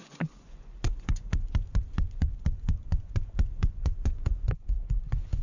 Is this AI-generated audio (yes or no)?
yes